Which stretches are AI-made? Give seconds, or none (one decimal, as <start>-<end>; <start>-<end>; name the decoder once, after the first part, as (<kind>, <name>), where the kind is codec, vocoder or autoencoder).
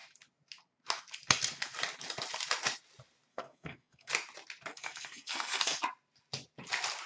3.3-4.1 (codec, SNAC); 4.7-5.8